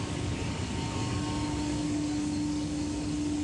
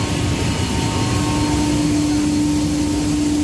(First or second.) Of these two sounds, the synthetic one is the first